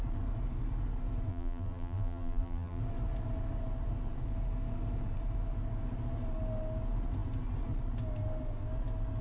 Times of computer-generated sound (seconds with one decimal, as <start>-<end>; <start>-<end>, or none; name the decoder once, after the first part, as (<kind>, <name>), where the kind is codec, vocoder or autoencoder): 1.3-2.8 (vocoder, BigVGAN v2)